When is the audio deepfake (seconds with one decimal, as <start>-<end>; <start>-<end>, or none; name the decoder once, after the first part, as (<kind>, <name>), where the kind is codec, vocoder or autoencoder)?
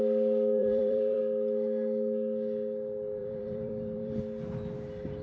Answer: 0.6-1.2 (vocoder, BigVGAN v2); 3.2-4.2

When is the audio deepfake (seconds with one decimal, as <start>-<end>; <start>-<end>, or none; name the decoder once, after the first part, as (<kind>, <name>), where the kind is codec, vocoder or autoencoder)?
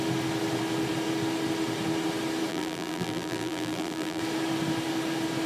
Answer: 2.5-4.2 (vocoder, BigVGAN v2)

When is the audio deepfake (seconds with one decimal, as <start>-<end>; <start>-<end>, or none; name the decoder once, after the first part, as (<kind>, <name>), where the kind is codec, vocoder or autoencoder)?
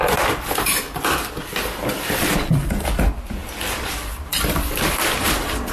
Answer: none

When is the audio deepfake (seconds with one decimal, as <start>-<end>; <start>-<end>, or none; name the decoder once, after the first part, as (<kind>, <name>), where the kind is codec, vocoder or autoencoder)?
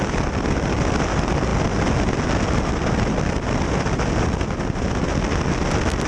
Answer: none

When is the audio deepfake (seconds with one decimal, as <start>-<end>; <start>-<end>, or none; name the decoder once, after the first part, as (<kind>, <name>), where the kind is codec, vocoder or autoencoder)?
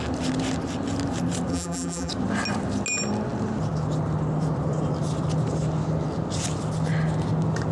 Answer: 1.5-2.1 (vocoder, BigVGAN v2)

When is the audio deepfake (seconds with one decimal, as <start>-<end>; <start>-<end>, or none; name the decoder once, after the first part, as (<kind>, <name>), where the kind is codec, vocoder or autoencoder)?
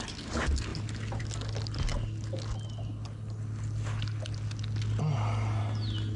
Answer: none